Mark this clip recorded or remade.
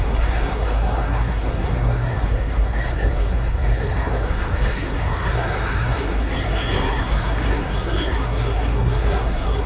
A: remade